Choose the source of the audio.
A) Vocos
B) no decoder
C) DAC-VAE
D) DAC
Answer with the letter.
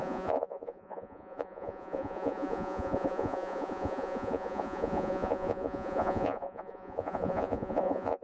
A